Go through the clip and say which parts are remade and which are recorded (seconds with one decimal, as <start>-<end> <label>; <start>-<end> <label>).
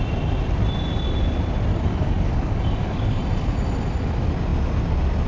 0.0-1.7 recorded; 1.7-3.2 remade; 3.2-5.3 recorded